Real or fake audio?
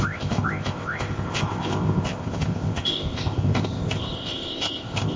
fake